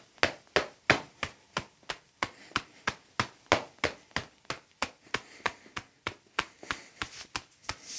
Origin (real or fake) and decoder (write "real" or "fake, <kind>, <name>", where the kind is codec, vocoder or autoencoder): real